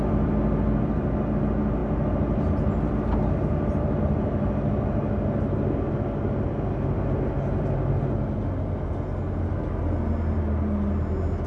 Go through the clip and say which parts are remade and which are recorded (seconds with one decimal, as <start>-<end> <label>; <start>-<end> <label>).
0.0-11.5 recorded